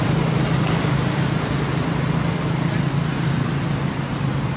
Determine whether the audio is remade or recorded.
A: recorded